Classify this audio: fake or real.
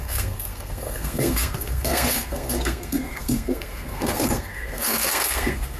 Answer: fake